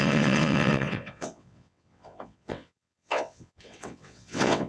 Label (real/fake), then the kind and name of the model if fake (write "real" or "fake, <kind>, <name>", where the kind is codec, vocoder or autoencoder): fake, vocoder, WaveNeXt